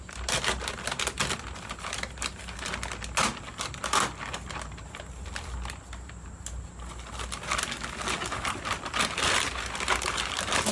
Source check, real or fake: real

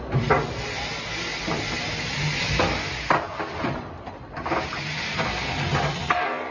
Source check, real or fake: real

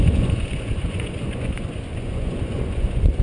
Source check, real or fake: fake